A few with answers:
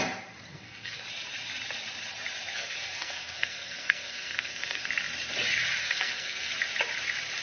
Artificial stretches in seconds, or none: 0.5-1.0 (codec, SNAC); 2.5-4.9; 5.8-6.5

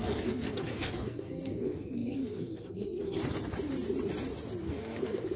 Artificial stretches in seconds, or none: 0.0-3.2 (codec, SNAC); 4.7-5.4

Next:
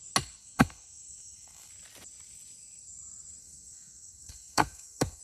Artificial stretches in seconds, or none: 0.4-1.7 (codec, SNAC); 3.4-5.2

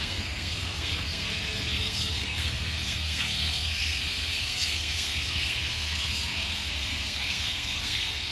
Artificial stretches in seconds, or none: 0.0-8.3 (codec, SNAC)